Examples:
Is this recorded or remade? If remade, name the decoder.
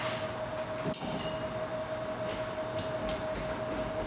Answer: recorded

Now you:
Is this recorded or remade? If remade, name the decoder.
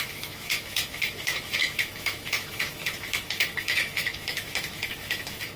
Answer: remade, autoencoder, DAC-VAE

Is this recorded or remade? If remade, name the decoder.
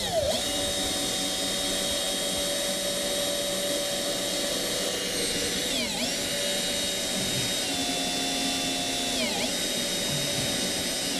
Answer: recorded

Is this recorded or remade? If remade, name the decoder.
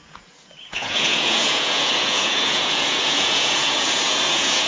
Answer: remade, vocoder, Vocos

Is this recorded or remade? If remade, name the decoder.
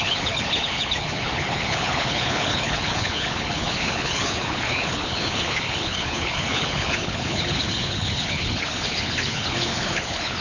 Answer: remade, codec, HILCodec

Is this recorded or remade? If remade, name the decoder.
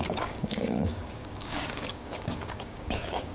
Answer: remade, codec, DAC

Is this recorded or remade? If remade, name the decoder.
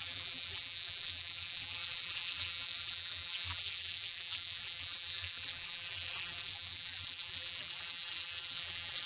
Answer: remade, vocoder, BigVGAN v2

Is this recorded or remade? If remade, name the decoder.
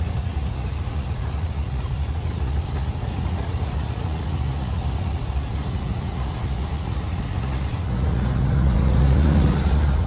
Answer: remade, vocoder, Vocos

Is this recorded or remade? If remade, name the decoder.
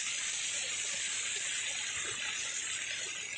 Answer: recorded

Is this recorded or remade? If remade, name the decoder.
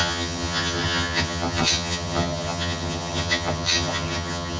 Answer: remade, vocoder, HiFi-GAN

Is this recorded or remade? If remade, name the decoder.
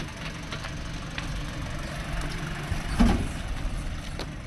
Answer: recorded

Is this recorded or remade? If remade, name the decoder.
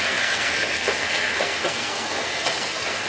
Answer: remade, codec, SNAC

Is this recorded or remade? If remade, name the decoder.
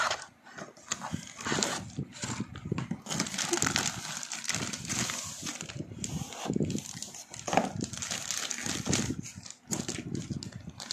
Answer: recorded